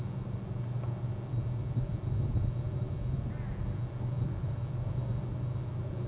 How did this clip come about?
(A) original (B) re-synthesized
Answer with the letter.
A